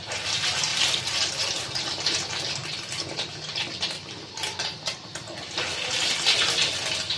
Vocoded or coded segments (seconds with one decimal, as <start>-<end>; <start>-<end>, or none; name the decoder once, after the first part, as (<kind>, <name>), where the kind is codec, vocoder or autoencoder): 0.7-1.4 (vocoder, BigVGAN v2); 2.6-5.7